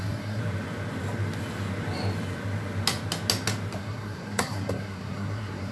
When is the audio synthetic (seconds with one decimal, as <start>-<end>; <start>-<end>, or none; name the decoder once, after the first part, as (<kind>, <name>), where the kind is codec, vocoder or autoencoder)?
0.0-0.4 (codec, SNAC); 3.8-5.7

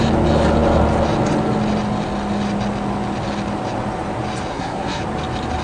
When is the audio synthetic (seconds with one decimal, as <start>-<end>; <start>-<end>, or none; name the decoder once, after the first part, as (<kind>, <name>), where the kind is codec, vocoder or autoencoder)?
4.5-5.0 (codec, SNAC)

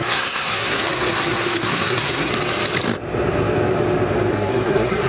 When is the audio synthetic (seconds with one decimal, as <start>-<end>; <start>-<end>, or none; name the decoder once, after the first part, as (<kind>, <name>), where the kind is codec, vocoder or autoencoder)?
0.0-2.3 (codec, SNAC); 4.3-5.1

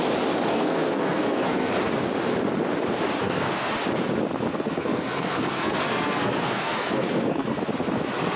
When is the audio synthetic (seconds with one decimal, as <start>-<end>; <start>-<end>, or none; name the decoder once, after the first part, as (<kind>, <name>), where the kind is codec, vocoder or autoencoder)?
0.5-1.7 (codec, SNAC); 3.2-3.7; 4.5-7.6

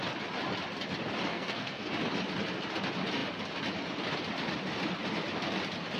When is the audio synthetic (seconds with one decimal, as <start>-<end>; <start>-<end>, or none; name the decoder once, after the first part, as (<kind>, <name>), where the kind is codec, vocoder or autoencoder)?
1.3-1.9 (codec, SNAC)